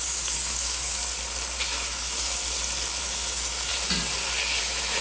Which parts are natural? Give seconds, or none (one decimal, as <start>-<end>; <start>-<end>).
1.0-1.6; 2.4-3.0; 3.7-4.6